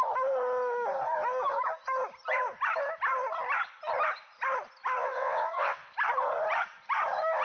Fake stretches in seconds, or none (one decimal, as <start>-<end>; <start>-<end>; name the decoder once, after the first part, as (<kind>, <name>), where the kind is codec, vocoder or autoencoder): 5.0-5.9 (vocoder, WaveNeXt)